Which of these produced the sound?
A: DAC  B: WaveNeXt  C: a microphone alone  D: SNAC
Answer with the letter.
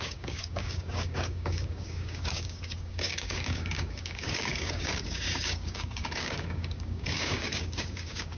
A